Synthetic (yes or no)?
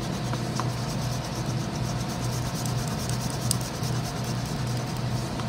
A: no